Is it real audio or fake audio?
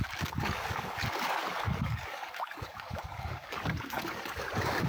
fake